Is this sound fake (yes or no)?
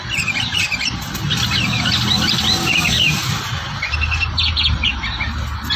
no